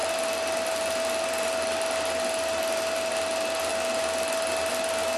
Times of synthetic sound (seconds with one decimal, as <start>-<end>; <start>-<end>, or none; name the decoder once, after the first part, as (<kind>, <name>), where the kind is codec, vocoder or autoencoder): none